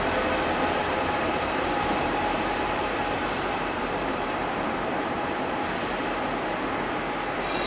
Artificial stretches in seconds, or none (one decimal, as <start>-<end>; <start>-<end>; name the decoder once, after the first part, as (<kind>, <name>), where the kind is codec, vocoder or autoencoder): 0.8-5.4 (vocoder, BigVGAN v2)